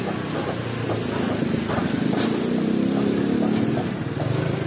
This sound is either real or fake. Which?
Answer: real